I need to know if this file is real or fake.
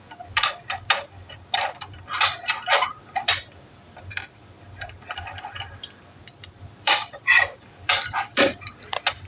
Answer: fake